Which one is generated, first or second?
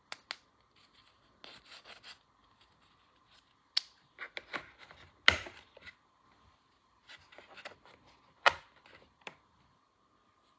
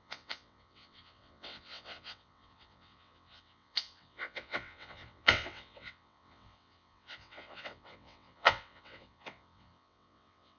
second